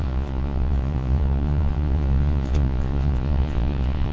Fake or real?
fake